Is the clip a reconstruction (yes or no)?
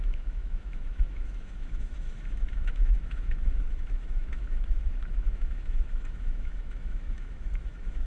yes